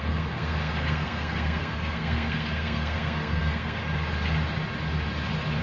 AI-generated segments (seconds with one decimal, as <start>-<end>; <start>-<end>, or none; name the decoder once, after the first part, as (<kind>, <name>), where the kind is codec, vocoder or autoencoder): 0.0-3.8 (codec, SNAC)